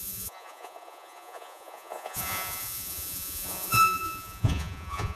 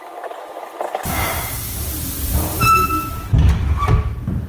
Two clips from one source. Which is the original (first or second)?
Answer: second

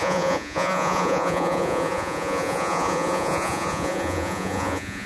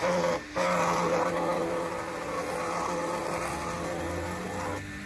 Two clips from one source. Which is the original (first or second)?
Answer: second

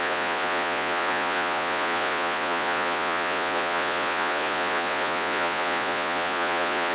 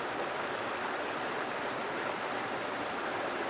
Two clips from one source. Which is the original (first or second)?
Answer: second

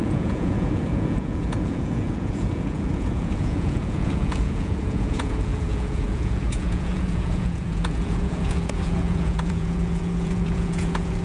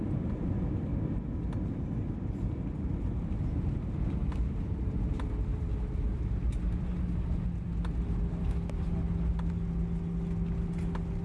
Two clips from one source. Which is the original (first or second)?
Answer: second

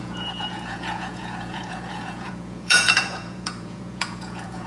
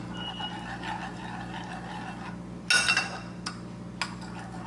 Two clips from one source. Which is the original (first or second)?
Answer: second